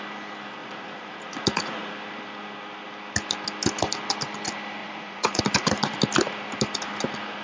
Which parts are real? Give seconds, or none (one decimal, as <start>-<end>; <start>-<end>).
0.0-0.6; 1.9-4.8; 5.4-7.4